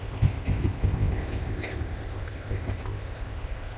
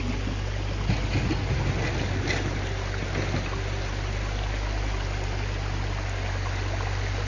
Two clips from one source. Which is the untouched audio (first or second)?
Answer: second